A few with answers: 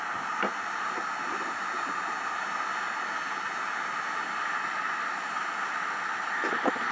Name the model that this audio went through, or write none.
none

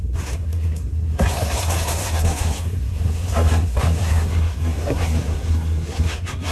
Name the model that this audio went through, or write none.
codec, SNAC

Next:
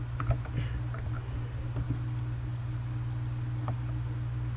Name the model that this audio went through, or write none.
none